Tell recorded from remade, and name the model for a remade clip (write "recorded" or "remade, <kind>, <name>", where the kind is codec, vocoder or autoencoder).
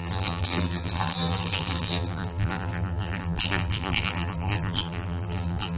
remade, vocoder, BigVGAN v2